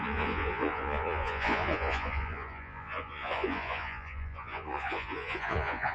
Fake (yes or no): yes